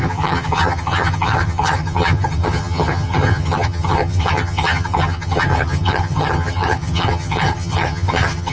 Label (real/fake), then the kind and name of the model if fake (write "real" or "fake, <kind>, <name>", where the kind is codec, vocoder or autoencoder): fake, vocoder, HiFi-GAN